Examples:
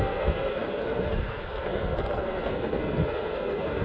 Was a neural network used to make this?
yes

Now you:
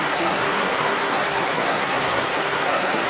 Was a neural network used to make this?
yes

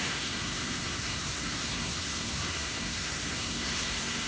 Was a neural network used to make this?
yes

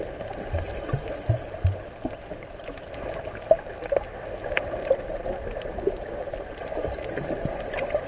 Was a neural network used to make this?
no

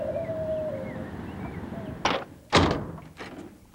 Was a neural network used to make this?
no